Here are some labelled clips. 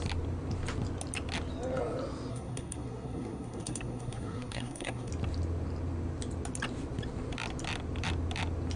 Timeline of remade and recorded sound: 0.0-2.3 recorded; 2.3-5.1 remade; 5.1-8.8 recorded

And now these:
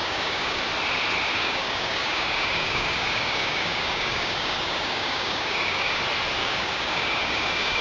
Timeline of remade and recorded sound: 0.0-0.6 remade; 0.6-1.3 recorded; 1.3-6.0 remade; 6.0-6.4 recorded; 6.4-7.8 remade

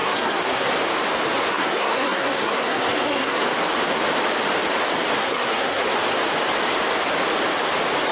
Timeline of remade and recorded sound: 0.0-0.7 remade; 0.7-1.5 recorded; 1.5-3.4 remade; 3.4-5.2 recorded; 5.2-5.8 remade; 5.8-8.1 recorded

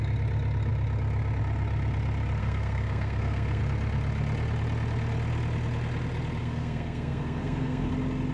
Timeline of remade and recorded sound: 0.0-2.4 recorded; 2.4-3.6 remade; 3.6-6.4 recorded; 6.4-7.9 remade; 7.9-8.3 recorded

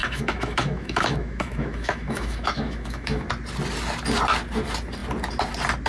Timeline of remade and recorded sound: 0.0-3.3 remade; 3.3-5.9 recorded

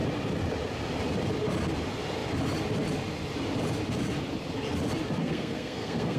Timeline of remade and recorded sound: 0.0-5.2 recorded; 5.2-6.2 remade

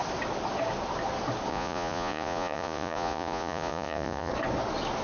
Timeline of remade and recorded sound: 0.0-1.5 recorded; 1.5-4.3 remade; 4.3-5.0 recorded

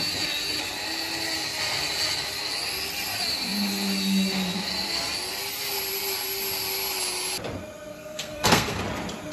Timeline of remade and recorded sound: 0.0-7.9 recorded; 7.9-8.8 remade; 8.8-9.3 recorded